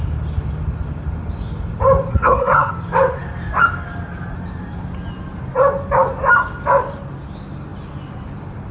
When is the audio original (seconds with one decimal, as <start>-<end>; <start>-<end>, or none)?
0.0-2.1; 2.7-8.7